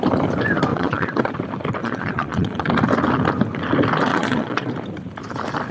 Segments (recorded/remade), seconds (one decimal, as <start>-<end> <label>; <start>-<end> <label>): 0.0-0.7 recorded; 0.7-1.3 remade; 1.3-1.8 recorded; 1.8-2.7 remade; 2.7-4.1 recorded; 4.1-4.7 remade; 4.7-5.7 recorded